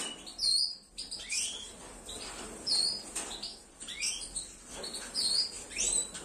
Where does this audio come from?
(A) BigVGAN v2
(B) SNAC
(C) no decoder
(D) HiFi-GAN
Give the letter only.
A